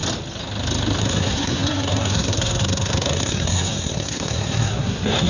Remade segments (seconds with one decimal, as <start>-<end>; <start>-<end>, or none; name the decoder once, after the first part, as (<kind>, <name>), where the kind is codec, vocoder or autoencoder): 1.0-5.3 (codec, SNAC)